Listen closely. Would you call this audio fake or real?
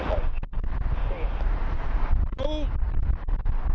real